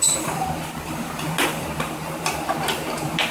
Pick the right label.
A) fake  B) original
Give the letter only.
A